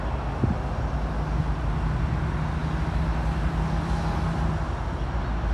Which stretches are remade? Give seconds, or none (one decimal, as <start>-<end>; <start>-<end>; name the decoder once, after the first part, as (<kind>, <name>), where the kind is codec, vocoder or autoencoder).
none